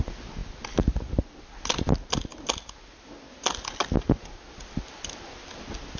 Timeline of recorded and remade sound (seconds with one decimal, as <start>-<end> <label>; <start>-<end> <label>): 0.0-6.0 recorded